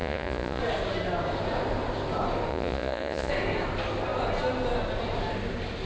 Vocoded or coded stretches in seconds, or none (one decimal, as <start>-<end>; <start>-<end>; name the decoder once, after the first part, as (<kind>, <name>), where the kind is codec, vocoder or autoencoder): 0.0-0.6 (vocoder, Vocos); 2.5-3.3